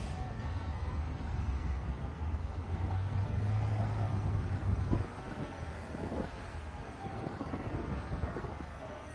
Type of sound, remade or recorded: remade